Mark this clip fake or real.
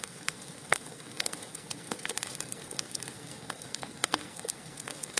fake